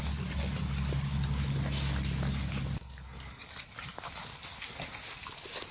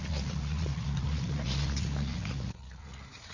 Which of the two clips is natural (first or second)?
first